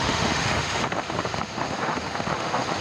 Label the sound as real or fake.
fake